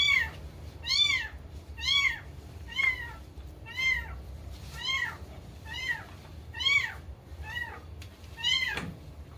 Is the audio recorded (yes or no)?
no